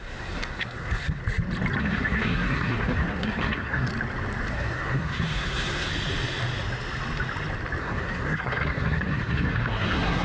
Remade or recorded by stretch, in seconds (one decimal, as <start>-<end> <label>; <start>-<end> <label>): 0.0-1.2 remade; 1.2-1.8 recorded; 1.8-3.9 remade; 3.9-4.5 recorded; 4.5-5.9 remade; 5.9-7.8 recorded; 7.8-10.2 remade